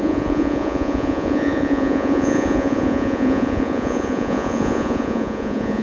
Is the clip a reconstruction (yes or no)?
yes